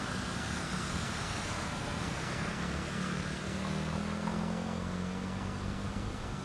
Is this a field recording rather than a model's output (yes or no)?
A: no